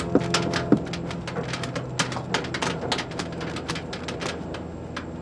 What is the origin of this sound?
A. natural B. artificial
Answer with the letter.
A